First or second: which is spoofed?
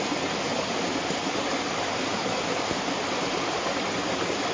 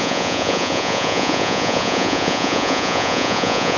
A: second